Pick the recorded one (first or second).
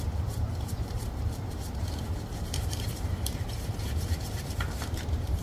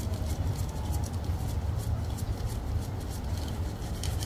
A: second